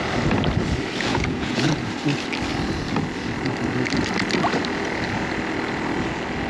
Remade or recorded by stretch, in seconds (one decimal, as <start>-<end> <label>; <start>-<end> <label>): 0.0-1.1 recorded; 1.1-1.7 remade; 1.7-6.5 recorded